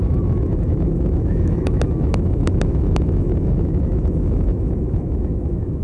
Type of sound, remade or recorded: remade